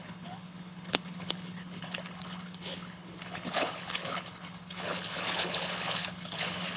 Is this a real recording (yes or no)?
no